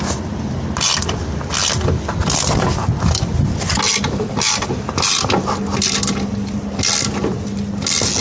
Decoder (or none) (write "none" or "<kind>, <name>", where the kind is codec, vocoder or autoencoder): none